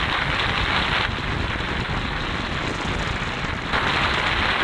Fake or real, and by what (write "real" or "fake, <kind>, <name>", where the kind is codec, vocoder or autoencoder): real